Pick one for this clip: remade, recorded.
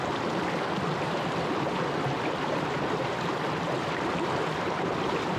recorded